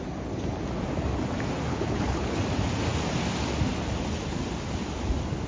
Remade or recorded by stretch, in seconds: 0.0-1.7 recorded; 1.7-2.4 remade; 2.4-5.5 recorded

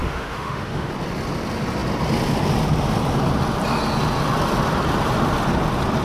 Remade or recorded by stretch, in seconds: 0.0-0.9 remade; 0.9-6.0 recorded

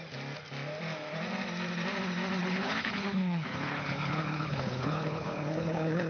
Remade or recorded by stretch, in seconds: 0.0-2.4 recorded; 2.4-6.1 remade

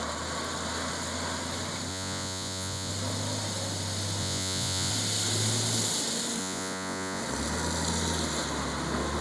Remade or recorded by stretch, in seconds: 0.0-1.9 recorded; 1.9-2.9 remade; 2.9-4.2 recorded; 4.2-4.9 remade; 4.9-6.4 recorded; 6.4-7.2 remade; 7.2-9.2 recorded

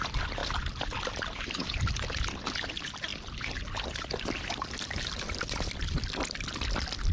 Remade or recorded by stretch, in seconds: 0.0-7.1 recorded